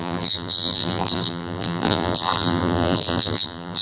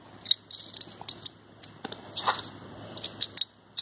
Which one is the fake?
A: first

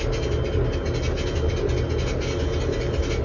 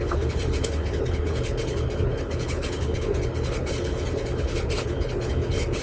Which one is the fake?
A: second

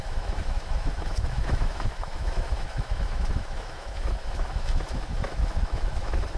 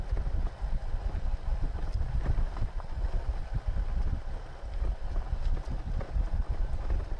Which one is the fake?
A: first